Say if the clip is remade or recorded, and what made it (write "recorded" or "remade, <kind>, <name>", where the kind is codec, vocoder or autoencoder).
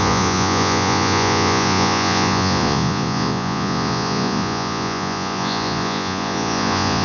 remade, vocoder, Vocos